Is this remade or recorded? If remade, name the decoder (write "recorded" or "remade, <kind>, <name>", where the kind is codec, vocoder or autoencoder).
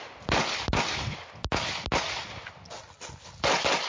recorded